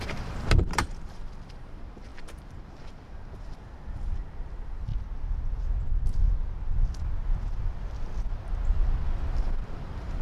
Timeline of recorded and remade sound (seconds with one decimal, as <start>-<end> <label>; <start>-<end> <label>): 0.0-4.9 remade; 4.9-9.3 recorded; 9.3-10.2 remade